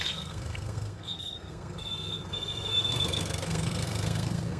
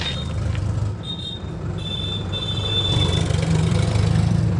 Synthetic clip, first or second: first